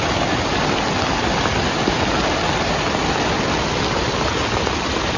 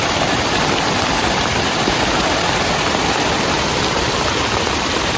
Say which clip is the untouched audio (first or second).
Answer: first